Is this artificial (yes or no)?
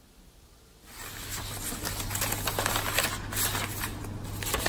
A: no